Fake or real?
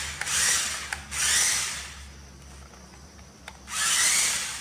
real